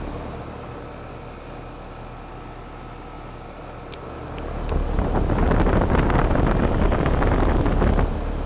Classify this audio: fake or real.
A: real